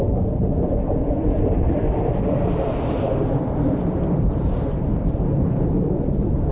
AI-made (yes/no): yes